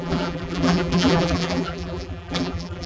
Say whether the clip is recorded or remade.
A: remade